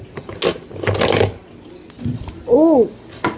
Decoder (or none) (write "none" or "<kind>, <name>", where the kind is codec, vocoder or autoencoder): none